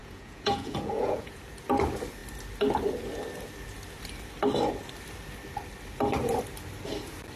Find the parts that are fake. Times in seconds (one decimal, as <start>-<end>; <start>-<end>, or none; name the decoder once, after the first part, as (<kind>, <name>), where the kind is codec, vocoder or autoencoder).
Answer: 0.0-1.4 (vocoder, Vocos)